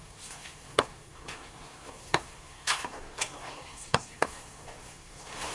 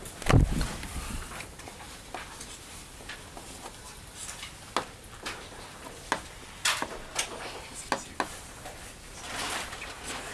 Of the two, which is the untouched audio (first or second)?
second